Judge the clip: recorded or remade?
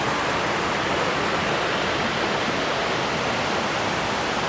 recorded